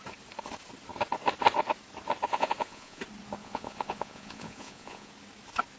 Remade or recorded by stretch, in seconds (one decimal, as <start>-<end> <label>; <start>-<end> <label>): 0.0-2.3 recorded; 2.3-3.0 remade; 3.0-3.4 recorded; 3.4-5.1 remade; 5.1-5.8 recorded